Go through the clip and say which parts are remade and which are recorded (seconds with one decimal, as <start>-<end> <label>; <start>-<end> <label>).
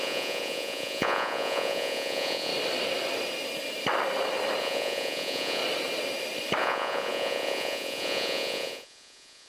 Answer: 0.0-2.5 remade; 2.5-4.6 recorded; 4.6-5.6 remade; 5.6-6.6 recorded; 6.6-9.5 remade